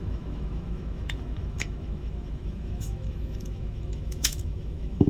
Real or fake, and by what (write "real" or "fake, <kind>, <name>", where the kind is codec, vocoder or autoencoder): fake, autoencoder, DAC-VAE